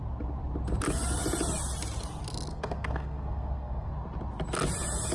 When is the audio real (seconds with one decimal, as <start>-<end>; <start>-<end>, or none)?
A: 0.0-2.5; 3.9-5.1